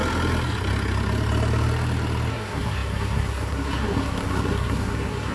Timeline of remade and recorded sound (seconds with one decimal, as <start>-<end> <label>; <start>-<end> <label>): 0.0-2.3 recorded; 2.3-5.3 remade